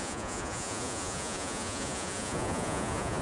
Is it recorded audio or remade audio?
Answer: remade